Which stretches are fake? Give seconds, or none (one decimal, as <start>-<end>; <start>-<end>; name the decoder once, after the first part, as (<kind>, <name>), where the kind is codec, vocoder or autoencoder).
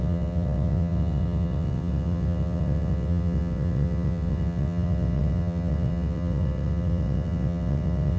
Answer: 0.0-8.2 (vocoder, WaveNeXt)